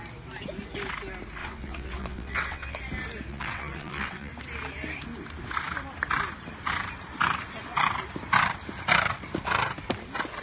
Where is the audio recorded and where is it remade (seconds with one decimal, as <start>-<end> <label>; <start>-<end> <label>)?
0.0-1.4 recorded; 1.4-2.8 remade; 2.8-3.3 recorded; 3.3-4.3 remade; 4.3-10.4 recorded